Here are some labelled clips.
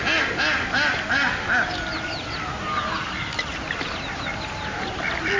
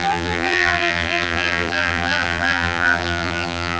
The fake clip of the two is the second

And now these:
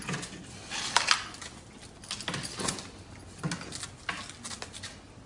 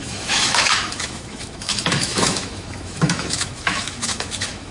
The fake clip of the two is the second